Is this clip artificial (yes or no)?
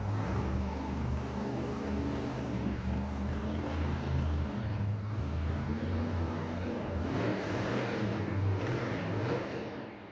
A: yes